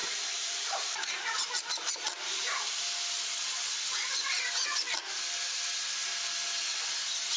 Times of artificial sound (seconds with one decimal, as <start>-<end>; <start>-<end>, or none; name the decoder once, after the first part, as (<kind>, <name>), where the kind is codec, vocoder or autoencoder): 0.0-2.8 (vocoder, BigVGAN v2)